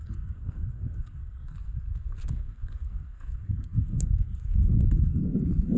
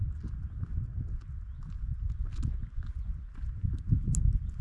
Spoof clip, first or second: first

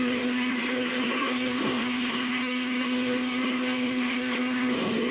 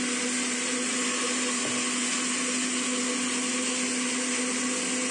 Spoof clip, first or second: first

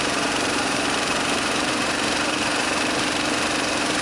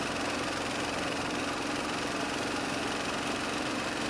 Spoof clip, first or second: first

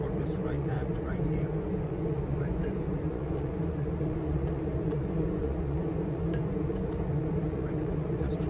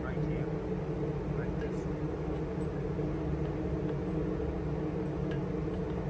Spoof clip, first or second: first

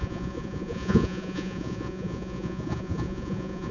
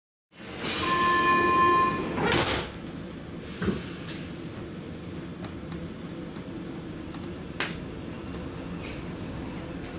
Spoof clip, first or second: first